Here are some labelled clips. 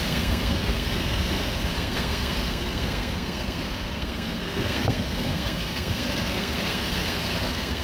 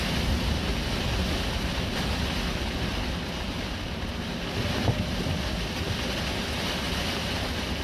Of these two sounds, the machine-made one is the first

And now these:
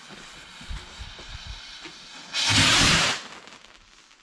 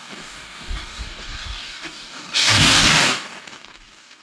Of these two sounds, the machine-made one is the second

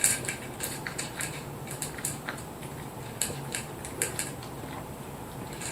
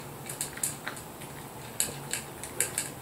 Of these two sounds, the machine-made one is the first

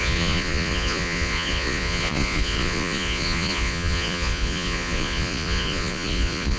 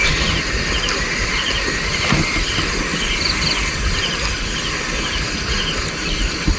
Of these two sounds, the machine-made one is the first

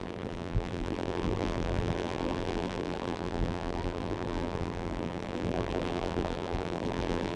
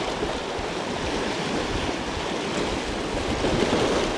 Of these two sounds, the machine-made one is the first